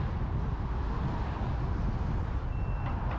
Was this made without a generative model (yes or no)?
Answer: yes